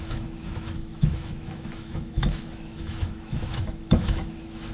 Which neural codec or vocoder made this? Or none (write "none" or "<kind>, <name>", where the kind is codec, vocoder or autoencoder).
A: autoencoder, DAC-VAE